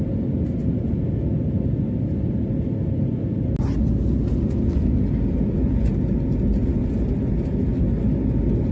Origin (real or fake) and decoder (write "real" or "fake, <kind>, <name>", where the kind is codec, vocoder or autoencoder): real